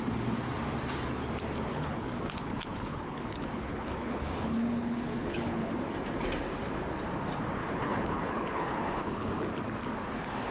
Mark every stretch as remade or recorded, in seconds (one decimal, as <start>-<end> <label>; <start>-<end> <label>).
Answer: 0.0-1.7 recorded; 1.7-5.7 remade; 5.7-7.6 recorded; 7.6-9.3 remade; 9.3-10.5 recorded